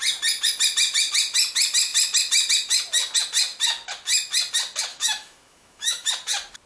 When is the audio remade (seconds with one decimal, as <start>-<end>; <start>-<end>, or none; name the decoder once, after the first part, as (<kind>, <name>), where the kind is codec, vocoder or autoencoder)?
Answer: 4.9-6.1 (autoencoder, DAC-VAE)